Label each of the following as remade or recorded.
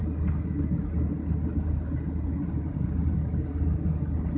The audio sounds recorded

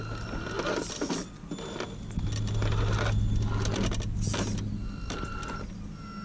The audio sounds recorded